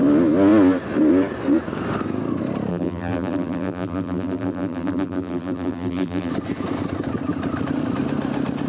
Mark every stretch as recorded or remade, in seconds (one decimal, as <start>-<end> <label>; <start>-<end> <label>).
0.0-2.7 recorded; 2.7-6.3 remade; 6.3-8.7 recorded